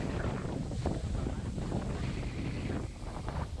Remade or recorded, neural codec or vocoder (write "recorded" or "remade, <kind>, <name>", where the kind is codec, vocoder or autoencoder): recorded